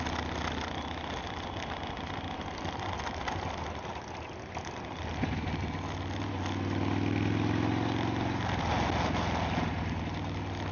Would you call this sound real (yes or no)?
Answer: yes